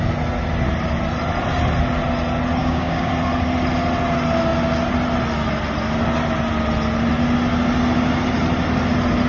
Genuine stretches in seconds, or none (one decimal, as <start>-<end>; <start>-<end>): 0.0-2.6; 3.1-9.3

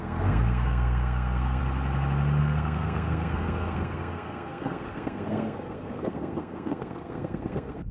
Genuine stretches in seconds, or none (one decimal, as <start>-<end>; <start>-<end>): 1.6-2.4

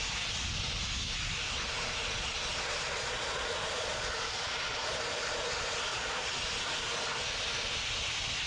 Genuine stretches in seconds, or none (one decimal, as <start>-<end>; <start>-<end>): 0.0-2.2; 5.0-5.9; 6.4-8.5

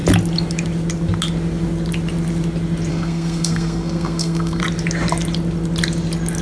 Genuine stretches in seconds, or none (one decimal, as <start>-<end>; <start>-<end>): 0.0-2.9; 4.6-6.4

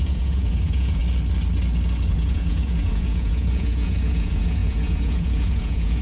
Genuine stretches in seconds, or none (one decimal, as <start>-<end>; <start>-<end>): 1.0-2.1

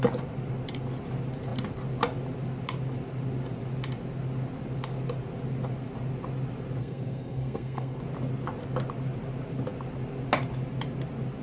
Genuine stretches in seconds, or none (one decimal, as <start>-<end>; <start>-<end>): 0.0-6.8; 8.0-11.4

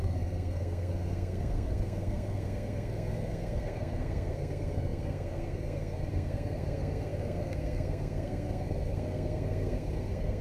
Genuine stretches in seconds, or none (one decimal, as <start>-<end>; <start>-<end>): none